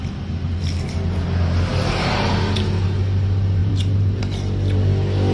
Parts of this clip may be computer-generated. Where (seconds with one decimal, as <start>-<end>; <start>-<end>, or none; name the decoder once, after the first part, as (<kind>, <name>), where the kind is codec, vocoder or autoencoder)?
1.7-2.3 (vocoder, BigVGAN v2); 3.6-4.2